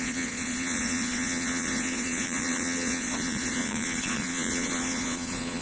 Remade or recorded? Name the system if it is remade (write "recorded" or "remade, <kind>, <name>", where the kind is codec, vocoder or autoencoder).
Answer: remade, vocoder, Vocos